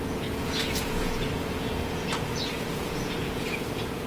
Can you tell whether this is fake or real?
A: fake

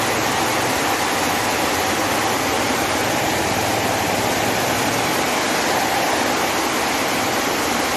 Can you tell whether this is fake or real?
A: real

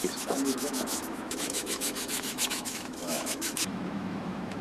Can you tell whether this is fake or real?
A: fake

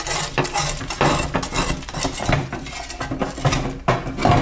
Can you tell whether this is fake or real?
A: real